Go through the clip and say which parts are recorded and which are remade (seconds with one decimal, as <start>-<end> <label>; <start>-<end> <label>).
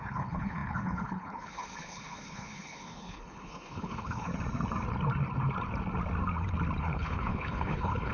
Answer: 0.0-4.3 remade; 4.3-6.8 recorded; 6.8-8.1 remade